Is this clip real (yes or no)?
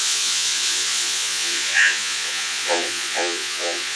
no